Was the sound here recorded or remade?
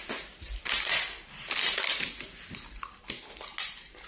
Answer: recorded